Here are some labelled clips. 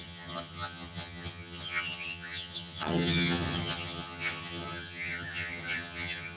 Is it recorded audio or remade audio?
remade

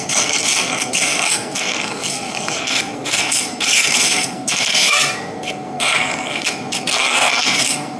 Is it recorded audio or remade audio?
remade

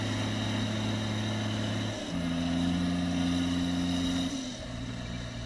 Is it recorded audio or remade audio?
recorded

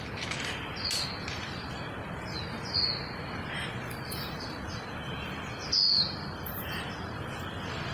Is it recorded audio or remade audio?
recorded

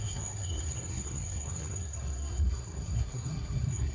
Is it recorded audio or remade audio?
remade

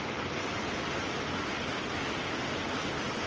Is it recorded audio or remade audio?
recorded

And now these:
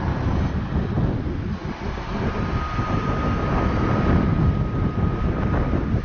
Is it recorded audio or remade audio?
recorded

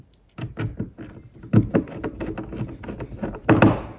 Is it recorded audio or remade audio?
recorded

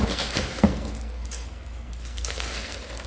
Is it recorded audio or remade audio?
remade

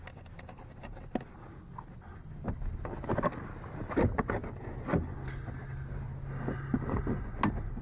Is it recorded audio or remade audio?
recorded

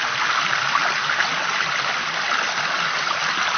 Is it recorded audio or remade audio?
recorded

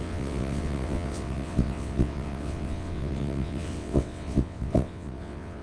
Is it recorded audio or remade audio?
remade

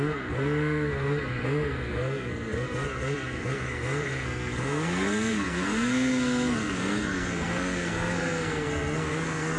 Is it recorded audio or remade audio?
remade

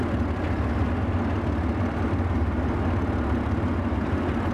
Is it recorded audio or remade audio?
recorded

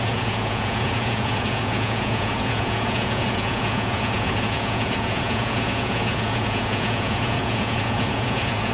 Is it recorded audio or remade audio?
remade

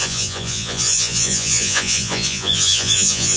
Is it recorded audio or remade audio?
remade